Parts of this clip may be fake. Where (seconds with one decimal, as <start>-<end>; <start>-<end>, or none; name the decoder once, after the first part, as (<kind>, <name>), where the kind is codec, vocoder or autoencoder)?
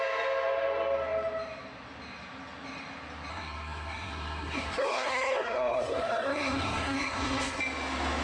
3.3-7.6 (codec, SNAC)